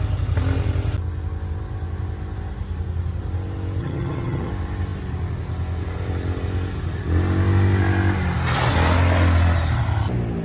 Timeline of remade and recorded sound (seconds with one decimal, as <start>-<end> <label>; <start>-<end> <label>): 0.0-3.8 recorded; 3.8-4.5 remade; 4.5-10.4 recorded